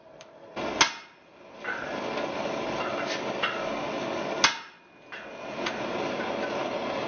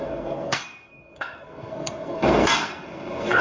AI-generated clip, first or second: second